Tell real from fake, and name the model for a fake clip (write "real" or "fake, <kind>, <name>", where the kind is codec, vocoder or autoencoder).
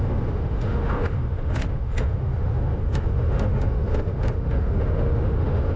fake, autoencoder, DAC-VAE